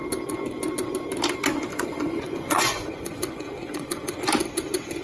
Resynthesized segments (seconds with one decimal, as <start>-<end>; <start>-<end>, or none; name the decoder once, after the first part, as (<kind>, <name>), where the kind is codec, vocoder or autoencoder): 1.7-4.2 (vocoder, Vocos)